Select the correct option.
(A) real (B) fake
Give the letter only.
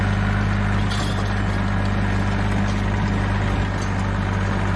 A